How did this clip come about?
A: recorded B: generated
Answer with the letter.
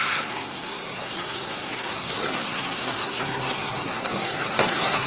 B